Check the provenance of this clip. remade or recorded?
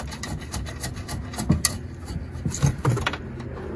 recorded